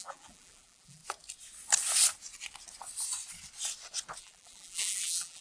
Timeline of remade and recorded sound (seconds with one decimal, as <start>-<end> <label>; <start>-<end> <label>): 0.0-1.0 remade; 1.0-4.2 recorded; 4.2-5.4 remade